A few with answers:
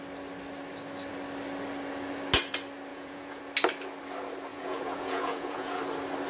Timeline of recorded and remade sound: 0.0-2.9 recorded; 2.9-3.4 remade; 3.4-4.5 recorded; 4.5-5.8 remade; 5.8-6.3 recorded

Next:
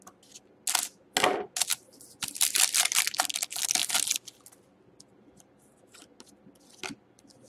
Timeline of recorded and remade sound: 0.0-1.7 recorded; 1.7-2.9 remade; 2.9-3.8 recorded; 3.8-5.3 remade; 5.3-7.5 recorded

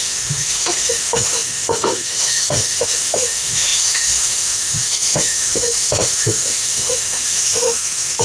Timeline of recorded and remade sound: 0.0-8.2 remade

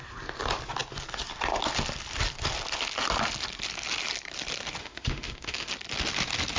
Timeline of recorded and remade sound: 0.0-4.8 recorded; 4.8-5.7 remade; 5.7-6.6 recorded

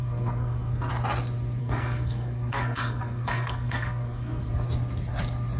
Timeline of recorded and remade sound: 0.0-0.9 remade; 0.9-1.6 recorded; 1.6-4.5 remade; 4.5-5.6 recorded

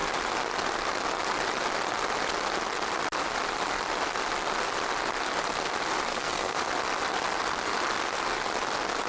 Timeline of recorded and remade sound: 0.0-6.1 recorded; 6.1-6.7 remade; 6.7-9.1 recorded

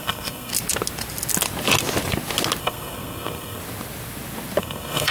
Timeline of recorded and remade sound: 0.0-0.5 remade; 0.5-2.6 recorded; 2.6-3.6 remade; 3.6-4.6 recorded; 4.6-5.1 remade

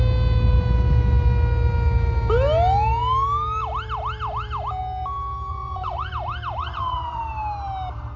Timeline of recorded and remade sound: 0.0-5.5 recorded; 5.5-6.1 remade; 6.1-6.6 recorded; 6.6-7.2 remade; 7.2-8.2 recorded